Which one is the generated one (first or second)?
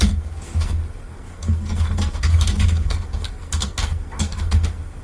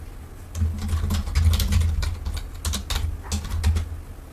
first